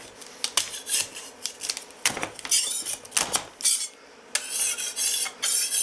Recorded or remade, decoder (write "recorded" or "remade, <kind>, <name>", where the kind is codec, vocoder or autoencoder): recorded